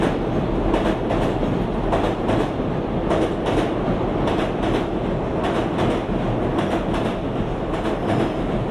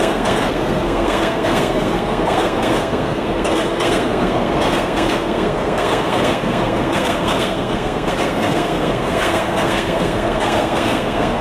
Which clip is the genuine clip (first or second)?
first